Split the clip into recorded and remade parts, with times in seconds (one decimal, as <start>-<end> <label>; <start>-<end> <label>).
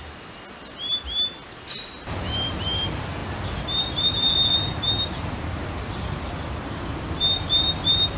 0.0-8.2 recorded